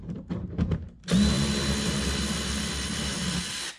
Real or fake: real